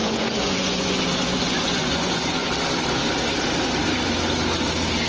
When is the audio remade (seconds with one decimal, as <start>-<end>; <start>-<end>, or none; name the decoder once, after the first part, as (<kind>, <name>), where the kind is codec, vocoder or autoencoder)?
0.0-2.5 (vocoder, Vocos)